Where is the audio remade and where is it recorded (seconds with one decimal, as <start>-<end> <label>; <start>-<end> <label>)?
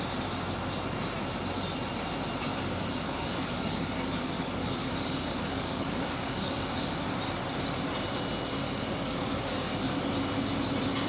0.0-2.5 recorded; 2.5-6.6 remade; 6.6-8.6 recorded; 8.6-10.0 remade; 10.0-11.1 recorded